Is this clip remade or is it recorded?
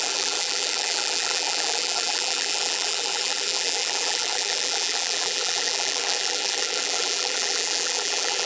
remade